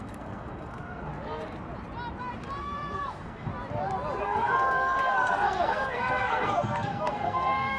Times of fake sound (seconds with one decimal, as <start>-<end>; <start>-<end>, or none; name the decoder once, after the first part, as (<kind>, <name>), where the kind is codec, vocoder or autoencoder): 0.0-1.1 (codec, SNAC); 2.6-3.5; 4.2-7.8